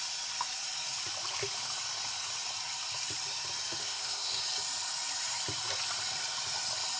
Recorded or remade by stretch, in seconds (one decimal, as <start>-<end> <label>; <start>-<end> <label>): 0.0-3.8 recorded; 3.8-4.4 remade; 4.4-7.0 recorded